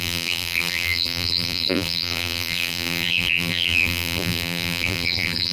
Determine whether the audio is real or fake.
fake